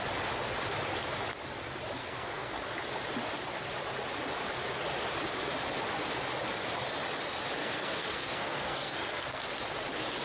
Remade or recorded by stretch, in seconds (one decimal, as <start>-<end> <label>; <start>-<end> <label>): 0.0-2.0 recorded; 2.0-2.6 remade; 2.6-7.6 recorded; 7.6-9.4 remade; 9.4-10.2 recorded